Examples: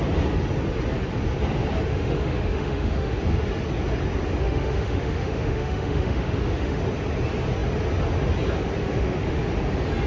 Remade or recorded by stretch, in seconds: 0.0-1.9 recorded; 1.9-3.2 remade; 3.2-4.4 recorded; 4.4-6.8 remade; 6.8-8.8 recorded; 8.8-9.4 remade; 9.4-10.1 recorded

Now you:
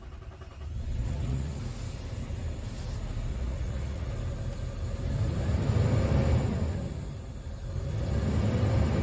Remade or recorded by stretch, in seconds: 0.0-1.0 recorded; 1.0-1.6 remade; 1.6-3.3 recorded; 3.3-4.1 remade; 4.1-9.0 recorded

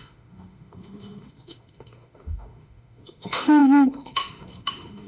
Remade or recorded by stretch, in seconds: 0.0-5.1 remade

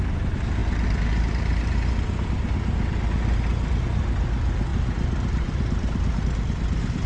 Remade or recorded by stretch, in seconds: 0.0-4.7 recorded; 4.7-6.2 remade; 6.2-7.1 recorded

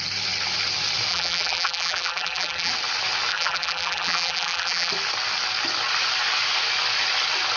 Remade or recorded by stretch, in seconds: 0.0-1.1 recorded; 1.1-2.7 remade; 2.7-3.3 recorded; 3.3-4.9 remade; 4.9-7.6 recorded

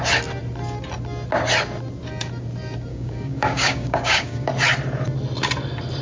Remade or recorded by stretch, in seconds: 0.0-2.9 recorded; 2.9-4.5 remade; 4.5-6.0 recorded

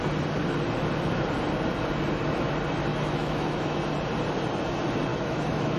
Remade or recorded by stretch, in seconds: 0.0-2.9 recorded; 2.9-3.8 remade; 3.8-5.1 recorded; 5.1-5.8 remade